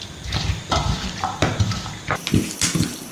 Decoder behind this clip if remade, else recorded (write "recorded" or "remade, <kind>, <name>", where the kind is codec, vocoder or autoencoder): remade, vocoder, BigVGAN v2